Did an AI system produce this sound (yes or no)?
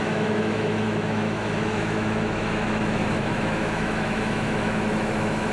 yes